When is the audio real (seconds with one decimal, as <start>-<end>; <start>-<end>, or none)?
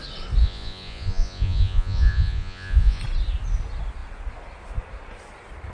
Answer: 0.0-0.4; 3.0-5.7